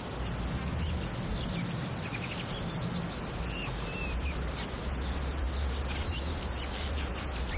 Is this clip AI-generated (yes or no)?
no